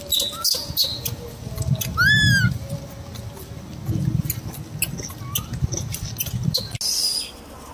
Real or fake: real